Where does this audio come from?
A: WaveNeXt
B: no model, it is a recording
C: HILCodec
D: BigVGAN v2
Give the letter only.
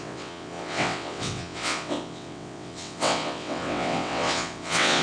A